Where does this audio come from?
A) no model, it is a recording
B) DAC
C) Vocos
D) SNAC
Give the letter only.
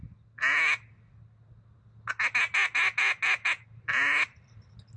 A